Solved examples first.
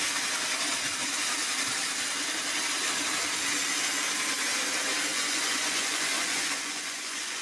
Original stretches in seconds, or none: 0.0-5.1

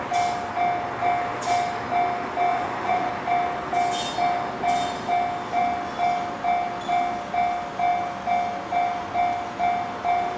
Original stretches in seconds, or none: 0.0-2.5; 3.1-10.4

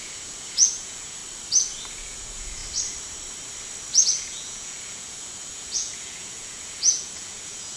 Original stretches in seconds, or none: 1.2-1.9; 2.6-4.1

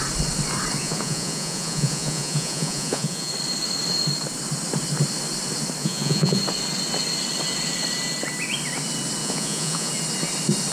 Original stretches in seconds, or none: 0.0-0.8; 3.3-5.8; 6.4-9.2; 9.9-10.7

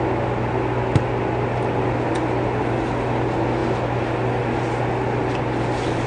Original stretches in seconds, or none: 0.0-6.1

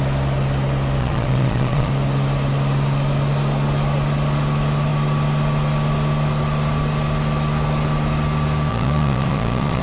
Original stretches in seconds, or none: 0.0-1.0; 1.9-8.7

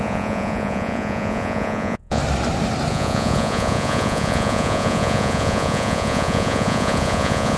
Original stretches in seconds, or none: 2.2-2.9

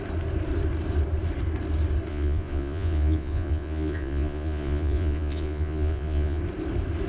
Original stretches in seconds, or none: 0.0-2.1; 6.4-7.1